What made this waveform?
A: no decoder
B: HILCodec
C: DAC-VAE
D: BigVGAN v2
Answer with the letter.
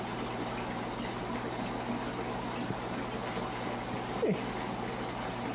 A